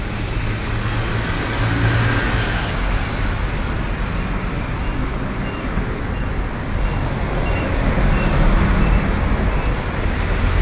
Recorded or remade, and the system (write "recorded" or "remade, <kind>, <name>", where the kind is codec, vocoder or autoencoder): recorded